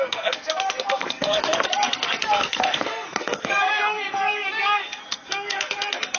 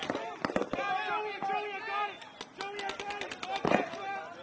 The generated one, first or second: first